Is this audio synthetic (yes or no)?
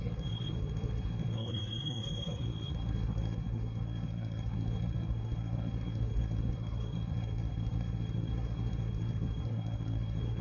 yes